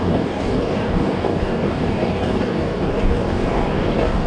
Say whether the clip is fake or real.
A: fake